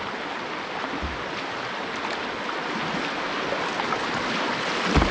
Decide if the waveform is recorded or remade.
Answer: recorded